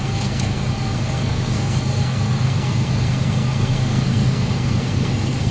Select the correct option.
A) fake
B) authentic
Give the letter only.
A